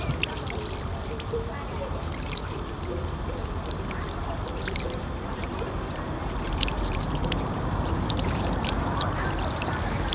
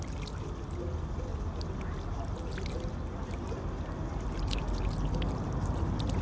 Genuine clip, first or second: second